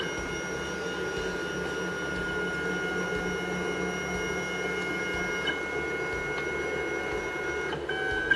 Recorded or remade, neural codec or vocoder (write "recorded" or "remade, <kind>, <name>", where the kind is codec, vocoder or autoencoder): recorded